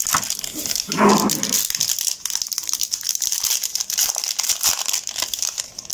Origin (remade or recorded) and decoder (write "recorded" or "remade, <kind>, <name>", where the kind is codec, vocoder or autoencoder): recorded